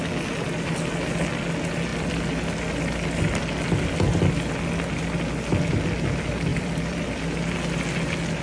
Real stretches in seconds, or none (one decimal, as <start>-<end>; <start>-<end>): 0.0-6.5; 7.5-8.4